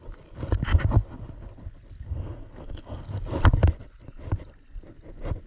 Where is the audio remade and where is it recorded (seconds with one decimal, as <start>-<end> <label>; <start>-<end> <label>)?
0.0-2.1 recorded; 2.1-3.0 remade; 3.0-5.5 recorded